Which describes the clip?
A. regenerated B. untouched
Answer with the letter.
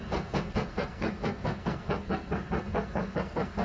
A